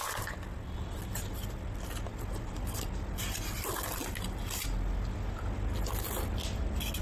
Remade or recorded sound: recorded